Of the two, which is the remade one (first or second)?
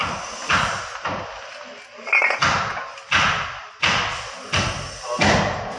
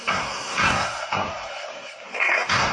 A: second